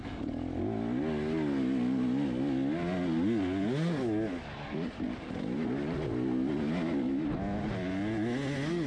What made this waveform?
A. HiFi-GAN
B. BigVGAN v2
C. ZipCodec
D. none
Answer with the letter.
D